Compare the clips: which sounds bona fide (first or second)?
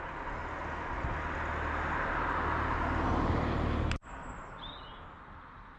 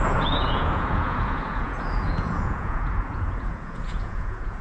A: first